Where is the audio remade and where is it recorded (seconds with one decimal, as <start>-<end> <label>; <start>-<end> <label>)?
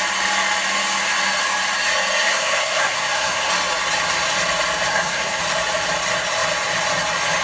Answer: 0.0-2.2 recorded; 2.2-3.5 remade; 3.5-4.9 recorded; 4.9-5.4 remade; 5.4-7.4 recorded